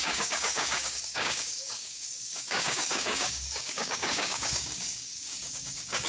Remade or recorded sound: remade